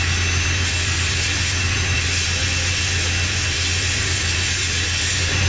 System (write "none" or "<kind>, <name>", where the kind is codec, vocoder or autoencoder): none